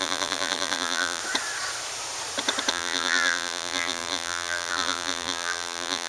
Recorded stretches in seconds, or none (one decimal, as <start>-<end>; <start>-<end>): 1.2-2.7